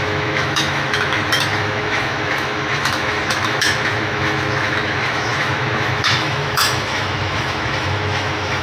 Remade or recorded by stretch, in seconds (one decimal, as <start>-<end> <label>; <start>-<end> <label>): 0.0-8.6 remade